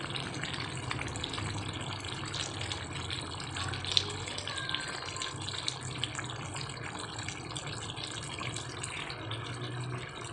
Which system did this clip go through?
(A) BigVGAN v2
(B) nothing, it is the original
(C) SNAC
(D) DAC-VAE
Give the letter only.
B